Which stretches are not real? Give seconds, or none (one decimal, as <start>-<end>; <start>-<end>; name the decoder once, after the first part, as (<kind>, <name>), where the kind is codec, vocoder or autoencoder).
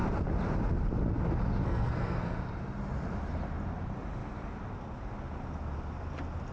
1.6-2.4 (codec, SNAC)